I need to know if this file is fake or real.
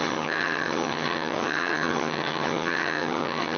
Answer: fake